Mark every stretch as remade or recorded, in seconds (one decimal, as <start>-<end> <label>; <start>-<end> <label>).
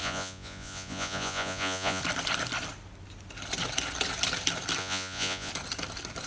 0.0-2.0 remade; 2.0-4.8 recorded; 4.8-5.5 remade; 5.5-6.3 recorded